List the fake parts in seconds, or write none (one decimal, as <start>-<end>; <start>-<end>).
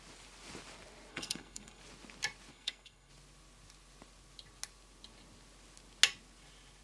1.1-1.8; 2.5-3.1